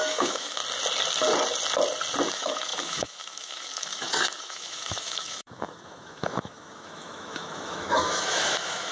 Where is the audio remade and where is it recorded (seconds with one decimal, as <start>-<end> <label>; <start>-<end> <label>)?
0.0-0.6 remade; 0.6-2.3 recorded; 2.3-8.9 remade